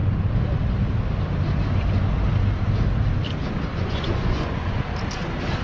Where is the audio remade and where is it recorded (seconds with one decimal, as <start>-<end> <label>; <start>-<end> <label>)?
0.0-3.7 recorded; 3.7-4.8 remade; 4.8-5.6 recorded